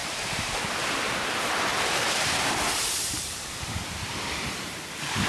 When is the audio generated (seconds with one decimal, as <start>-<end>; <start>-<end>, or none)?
0.0-0.6; 1.7-4.1